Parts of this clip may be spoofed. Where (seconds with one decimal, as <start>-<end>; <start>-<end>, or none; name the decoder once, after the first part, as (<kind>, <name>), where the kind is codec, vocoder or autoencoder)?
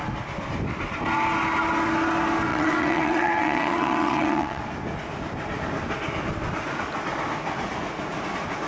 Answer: 2.5-4.6 (vocoder, WaveNeXt)